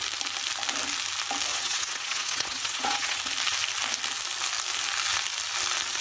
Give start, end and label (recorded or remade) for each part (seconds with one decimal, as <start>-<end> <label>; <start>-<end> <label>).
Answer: 0.0-1.5 recorded; 1.5-3.2 remade; 3.2-6.0 recorded